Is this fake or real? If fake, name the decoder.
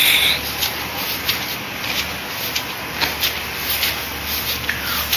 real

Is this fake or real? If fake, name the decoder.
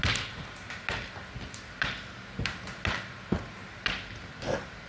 real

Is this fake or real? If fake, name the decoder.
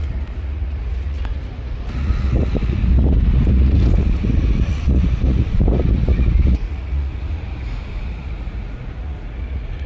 fake, vocoder, Vocos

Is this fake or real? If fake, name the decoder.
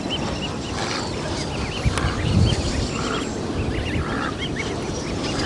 real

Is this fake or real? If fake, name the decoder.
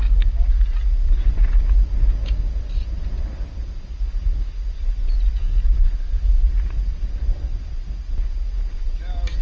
real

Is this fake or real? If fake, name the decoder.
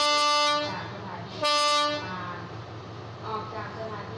real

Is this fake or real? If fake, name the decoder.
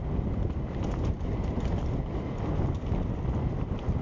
real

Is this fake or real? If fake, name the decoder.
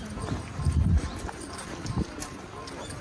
real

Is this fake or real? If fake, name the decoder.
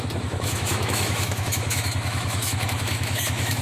fake, autoencoder, DAC-VAE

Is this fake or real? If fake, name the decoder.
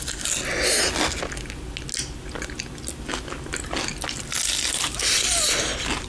real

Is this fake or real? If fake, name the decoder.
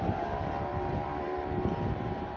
fake, vocoder, BigVGAN v2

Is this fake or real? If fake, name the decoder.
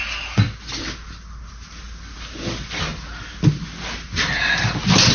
real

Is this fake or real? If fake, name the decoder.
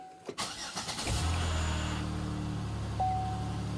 real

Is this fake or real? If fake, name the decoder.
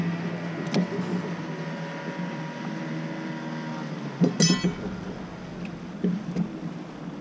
real